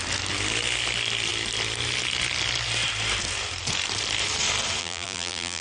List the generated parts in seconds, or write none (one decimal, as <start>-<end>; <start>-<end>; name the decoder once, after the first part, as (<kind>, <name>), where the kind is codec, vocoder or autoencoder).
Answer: 4.8-5.6 (vocoder, BigVGAN v2)